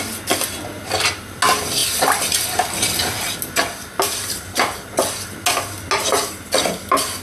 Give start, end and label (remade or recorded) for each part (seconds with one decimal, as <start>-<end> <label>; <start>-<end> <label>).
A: 0.0-7.2 recorded